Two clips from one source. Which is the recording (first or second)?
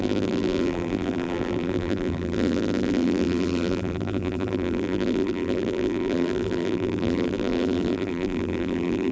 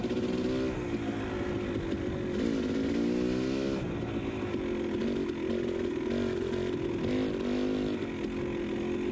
second